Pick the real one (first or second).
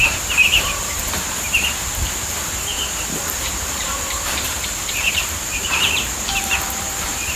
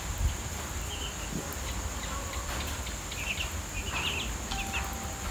second